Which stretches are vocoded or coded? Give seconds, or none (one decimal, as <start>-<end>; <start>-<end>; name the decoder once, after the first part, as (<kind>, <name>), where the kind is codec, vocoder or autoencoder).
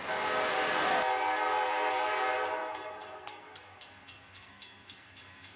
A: 2.6-5.6 (codec, SNAC)